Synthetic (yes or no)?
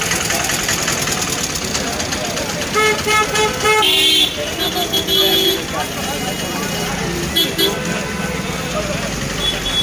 no